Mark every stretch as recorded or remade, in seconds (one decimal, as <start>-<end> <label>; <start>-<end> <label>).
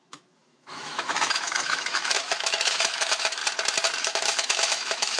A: 0.0-3.4 remade; 3.4-4.0 recorded; 4.0-5.2 remade